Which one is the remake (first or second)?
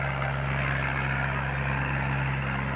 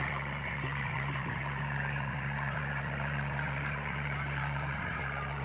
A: second